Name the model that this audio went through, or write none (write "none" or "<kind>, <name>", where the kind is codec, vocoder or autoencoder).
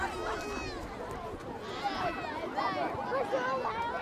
none